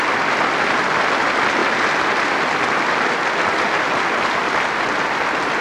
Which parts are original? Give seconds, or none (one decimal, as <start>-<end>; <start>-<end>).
0.0-5.6